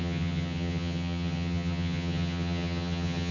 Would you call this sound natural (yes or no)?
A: no